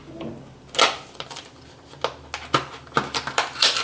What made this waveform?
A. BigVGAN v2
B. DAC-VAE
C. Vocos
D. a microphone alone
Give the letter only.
D